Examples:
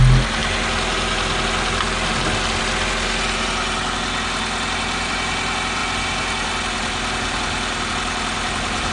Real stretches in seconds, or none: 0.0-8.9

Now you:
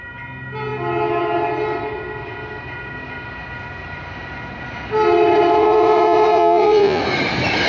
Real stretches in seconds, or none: 0.0-5.6; 7.0-7.7

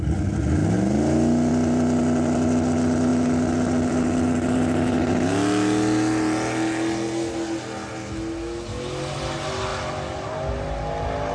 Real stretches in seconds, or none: 0.0-11.3

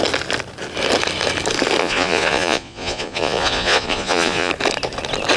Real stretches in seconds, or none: 0.0-1.8; 4.5-5.4

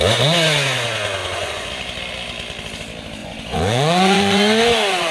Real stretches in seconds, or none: 0.0-1.2; 1.7-3.2